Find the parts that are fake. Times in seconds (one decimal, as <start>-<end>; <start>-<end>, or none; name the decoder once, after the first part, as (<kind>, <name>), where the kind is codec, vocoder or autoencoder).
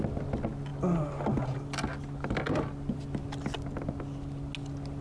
none